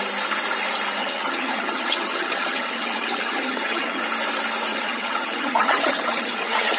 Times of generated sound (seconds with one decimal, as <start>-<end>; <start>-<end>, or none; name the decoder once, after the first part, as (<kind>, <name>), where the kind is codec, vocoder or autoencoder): 1.0-4.0 (vocoder, HiFi-GAN); 4.7-6.8